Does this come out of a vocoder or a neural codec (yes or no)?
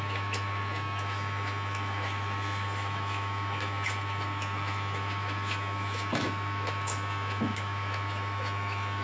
yes